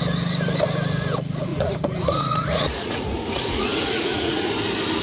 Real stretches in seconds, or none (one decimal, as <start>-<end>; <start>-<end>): 0.0-1.5; 4.5-5.0